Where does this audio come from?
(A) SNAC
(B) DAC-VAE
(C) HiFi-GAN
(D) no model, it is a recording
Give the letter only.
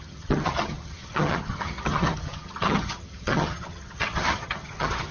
C